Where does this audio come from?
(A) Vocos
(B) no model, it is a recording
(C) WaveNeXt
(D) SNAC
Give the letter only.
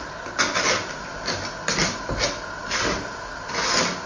B